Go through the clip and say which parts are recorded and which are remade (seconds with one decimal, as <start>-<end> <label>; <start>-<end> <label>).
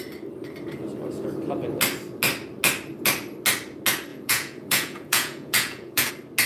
0.0-4.1 recorded; 4.1-6.1 remade; 6.1-6.5 recorded